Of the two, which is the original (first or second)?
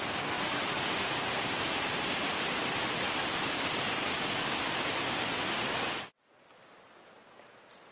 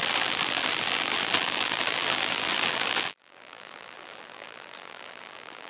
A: first